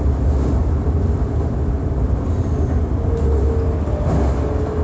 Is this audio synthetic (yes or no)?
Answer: no